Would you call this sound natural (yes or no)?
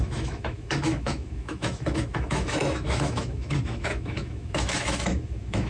no